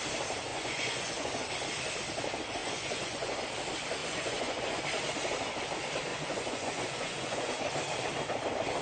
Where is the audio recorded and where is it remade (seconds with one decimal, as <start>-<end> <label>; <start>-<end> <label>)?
0.0-0.5 recorded; 0.5-1.5 remade; 1.5-2.6 recorded; 2.6-3.4 remade; 3.4-4.0 recorded; 4.0-4.8 remade; 4.8-6.1 recorded; 6.1-7.5 remade; 7.5-8.8 recorded